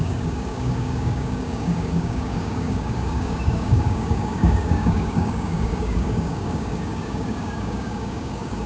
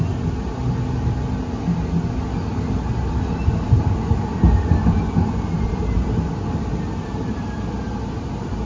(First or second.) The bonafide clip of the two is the second